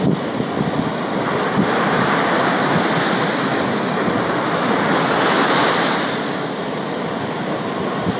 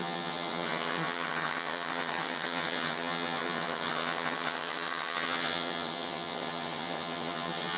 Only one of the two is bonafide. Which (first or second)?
first